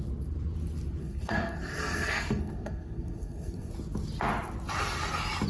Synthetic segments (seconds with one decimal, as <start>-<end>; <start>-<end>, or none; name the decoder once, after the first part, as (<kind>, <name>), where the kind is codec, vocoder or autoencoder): 1.0-3.7 (codec, SNAC)